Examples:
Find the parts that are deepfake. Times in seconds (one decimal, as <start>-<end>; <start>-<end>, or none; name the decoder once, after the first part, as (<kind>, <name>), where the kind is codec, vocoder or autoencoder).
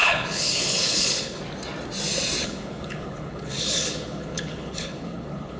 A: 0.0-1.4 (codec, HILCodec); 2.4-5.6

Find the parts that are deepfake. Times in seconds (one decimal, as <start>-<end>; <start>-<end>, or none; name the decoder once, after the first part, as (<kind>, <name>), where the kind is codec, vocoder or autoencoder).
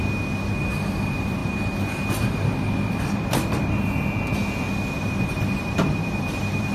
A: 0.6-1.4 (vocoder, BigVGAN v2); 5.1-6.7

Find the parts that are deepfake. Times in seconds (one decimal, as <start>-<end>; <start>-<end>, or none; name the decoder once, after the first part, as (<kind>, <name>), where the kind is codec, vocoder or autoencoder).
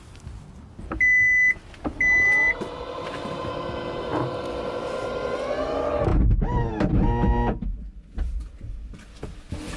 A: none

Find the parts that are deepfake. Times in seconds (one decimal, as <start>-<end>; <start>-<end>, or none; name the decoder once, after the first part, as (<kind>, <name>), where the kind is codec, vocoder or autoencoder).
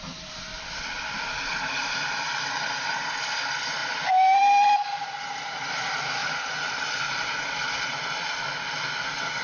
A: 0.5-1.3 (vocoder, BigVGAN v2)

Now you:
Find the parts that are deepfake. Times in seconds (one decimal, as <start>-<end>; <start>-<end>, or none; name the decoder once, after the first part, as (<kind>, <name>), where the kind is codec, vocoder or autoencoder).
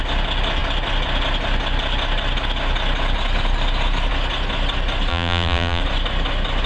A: 5.1-5.8 (vocoder, BigVGAN v2)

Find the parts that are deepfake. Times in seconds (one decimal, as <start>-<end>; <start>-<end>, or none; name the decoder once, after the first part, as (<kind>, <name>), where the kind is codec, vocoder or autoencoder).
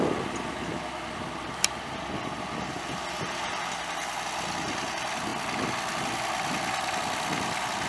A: none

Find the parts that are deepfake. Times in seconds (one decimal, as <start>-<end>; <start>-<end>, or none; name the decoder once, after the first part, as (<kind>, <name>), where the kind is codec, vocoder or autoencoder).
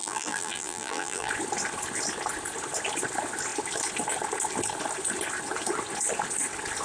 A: 0.0-1.3 (vocoder, BigVGAN v2)